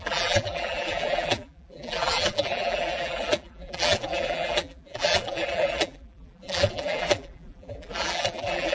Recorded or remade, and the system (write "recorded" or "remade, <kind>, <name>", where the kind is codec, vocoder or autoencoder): remade, vocoder, BigVGAN v2